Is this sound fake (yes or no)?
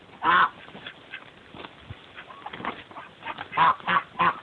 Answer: no